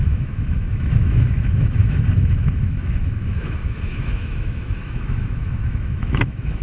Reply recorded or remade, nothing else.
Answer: remade